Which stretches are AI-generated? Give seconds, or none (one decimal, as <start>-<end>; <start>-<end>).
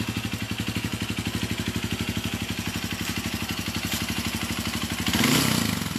none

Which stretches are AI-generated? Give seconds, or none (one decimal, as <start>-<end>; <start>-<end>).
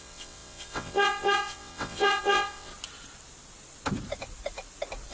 0.0-2.7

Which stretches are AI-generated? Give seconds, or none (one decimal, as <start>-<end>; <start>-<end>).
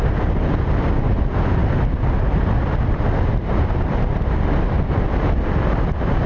none